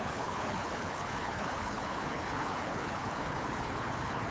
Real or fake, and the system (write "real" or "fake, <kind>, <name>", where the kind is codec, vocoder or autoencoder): fake, codec, HILCodec